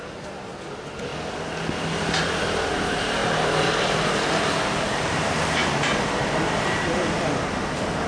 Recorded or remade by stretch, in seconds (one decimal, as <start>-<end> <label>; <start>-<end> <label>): 0.0-0.6 remade; 0.6-3.2 recorded; 3.2-7.2 remade; 7.2-8.1 recorded